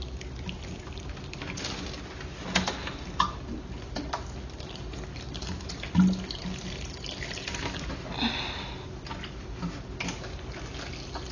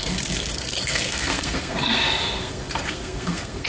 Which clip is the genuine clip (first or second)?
first